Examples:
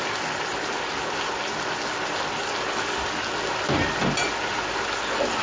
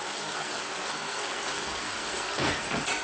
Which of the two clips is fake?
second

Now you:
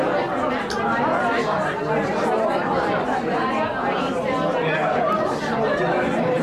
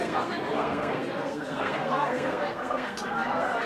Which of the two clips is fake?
second